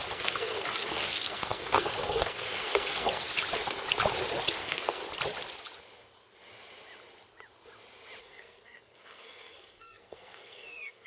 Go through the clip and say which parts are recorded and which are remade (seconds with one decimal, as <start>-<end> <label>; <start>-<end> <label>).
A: 0.0-3.3 remade; 3.3-4.6 recorded; 4.6-5.0 remade; 5.0-8.2 recorded; 8.2-11.1 remade